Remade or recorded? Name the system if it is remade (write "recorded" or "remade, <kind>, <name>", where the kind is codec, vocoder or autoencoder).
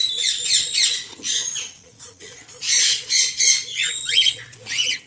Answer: remade, vocoder, Vocos